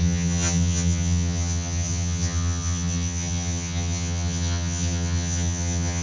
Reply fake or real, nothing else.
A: fake